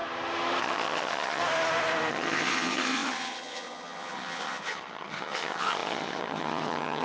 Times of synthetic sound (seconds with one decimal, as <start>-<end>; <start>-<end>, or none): 0.6-1.4; 2.1-7.0